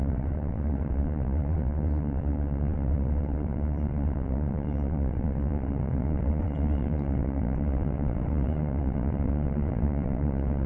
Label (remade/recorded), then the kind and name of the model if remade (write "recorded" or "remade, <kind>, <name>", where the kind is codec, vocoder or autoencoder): remade, vocoder, WaveNeXt